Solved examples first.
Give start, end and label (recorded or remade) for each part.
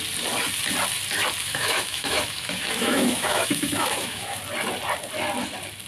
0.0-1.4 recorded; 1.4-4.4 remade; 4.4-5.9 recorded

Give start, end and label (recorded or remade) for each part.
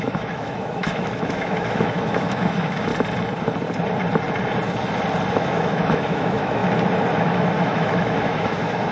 0.0-2.9 remade; 2.9-5.3 recorded; 5.3-6.6 remade; 6.6-7.2 recorded; 7.2-8.9 remade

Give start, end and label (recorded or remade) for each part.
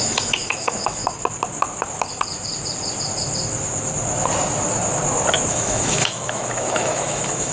0.0-1.0 remade; 1.0-5.5 recorded; 5.5-7.5 remade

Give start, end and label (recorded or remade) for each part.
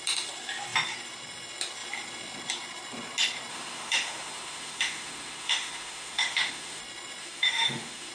0.0-3.5 recorded; 3.5-6.8 remade; 6.8-7.2 recorded; 7.2-8.1 remade